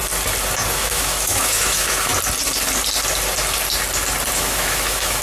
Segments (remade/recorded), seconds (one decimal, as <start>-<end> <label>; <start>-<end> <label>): 0.0-0.7 recorded; 0.7-2.1 remade; 2.1-4.3 recorded; 4.3-5.2 remade

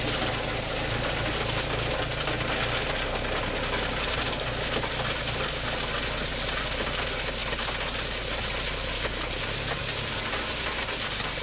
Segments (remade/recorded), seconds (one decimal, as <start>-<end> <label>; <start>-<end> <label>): 0.0-11.4 recorded

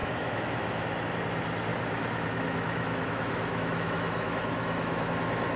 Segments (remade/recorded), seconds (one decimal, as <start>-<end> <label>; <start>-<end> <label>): 0.0-1.1 remade; 1.1-1.7 recorded; 1.7-5.1 remade; 5.1-5.6 recorded

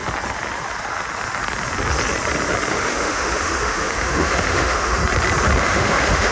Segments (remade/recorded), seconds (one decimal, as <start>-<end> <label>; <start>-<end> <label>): 0.0-2.7 recorded; 2.7-5.0 remade; 5.0-5.6 recorded; 5.6-6.3 remade

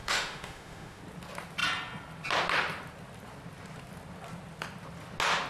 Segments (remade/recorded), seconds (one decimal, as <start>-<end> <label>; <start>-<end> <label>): 0.0-1.0 remade; 1.0-5.5 recorded

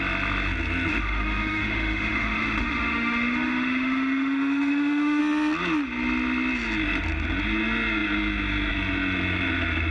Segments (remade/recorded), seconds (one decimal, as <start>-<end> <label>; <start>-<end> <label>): 0.0-0.9 recorded; 0.9-5.2 remade; 5.2-9.9 recorded

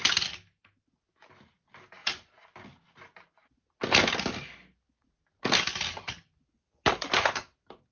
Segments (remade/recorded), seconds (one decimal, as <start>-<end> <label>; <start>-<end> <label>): 0.0-7.9 recorded